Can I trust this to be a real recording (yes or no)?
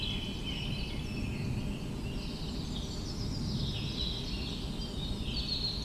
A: yes